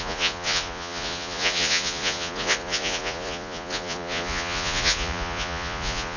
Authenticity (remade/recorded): remade